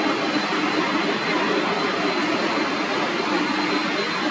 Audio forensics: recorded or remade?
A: recorded